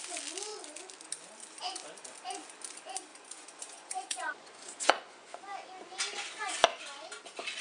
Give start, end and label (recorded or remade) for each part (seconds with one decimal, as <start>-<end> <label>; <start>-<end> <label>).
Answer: 0.0-3.1 recorded; 3.1-5.4 remade; 5.4-7.6 recorded